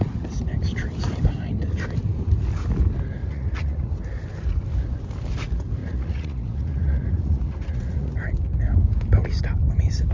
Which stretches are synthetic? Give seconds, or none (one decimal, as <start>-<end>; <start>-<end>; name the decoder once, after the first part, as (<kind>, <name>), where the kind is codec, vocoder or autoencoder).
3.2-3.9 (vocoder, Vocos); 5.8-8.1

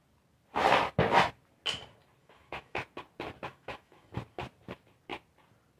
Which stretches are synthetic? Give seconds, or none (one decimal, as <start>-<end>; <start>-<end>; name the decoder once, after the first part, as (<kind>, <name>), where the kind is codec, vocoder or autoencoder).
2.2-2.8 (autoencoder, DAC-VAE); 3.5-4.1